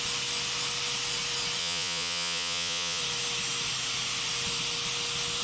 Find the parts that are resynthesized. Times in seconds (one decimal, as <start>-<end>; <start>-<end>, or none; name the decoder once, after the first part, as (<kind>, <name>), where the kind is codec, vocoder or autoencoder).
1.6-3.0 (vocoder, Vocos)